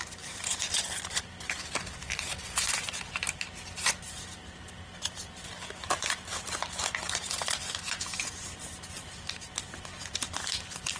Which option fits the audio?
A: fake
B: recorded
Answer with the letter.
B